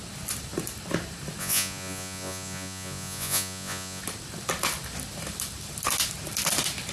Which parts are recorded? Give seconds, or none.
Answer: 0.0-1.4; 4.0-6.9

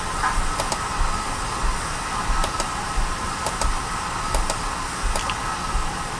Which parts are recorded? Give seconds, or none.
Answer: 0.0-2.4; 3.5-6.2

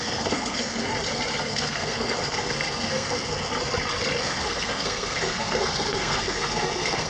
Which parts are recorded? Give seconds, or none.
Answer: 0.9-1.4; 3.5-4.2

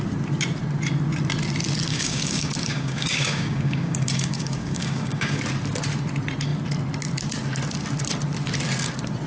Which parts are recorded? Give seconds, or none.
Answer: 0.0-1.9; 5.4-9.3